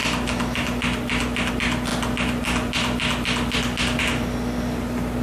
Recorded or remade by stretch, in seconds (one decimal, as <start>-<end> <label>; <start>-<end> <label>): 0.0-5.2 recorded

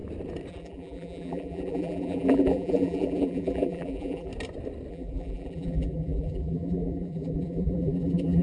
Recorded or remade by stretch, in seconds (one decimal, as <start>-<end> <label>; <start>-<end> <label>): 0.0-0.5 recorded; 0.5-4.3 remade; 4.3-4.9 recorded; 4.9-8.4 remade

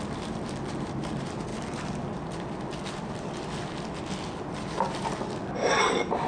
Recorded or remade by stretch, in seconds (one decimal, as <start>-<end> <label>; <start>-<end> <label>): 0.0-6.3 recorded

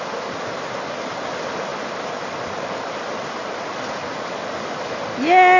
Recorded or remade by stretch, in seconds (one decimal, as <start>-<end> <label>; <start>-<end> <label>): 0.0-5.6 recorded

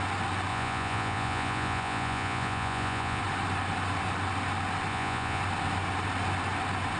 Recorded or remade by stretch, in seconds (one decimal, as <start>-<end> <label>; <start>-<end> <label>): 0.0-0.5 recorded; 0.5-3.2 remade; 3.2-4.9 recorded; 4.9-5.4 remade; 5.4-7.0 recorded